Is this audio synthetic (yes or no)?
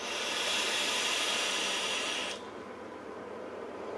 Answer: yes